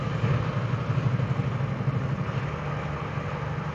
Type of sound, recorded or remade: recorded